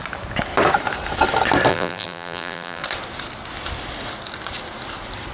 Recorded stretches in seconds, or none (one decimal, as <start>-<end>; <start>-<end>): 0.0-1.7; 2.8-5.3